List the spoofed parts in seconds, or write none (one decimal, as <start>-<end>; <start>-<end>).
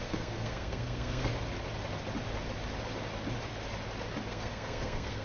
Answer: 0.0-1.3; 4.3-5.2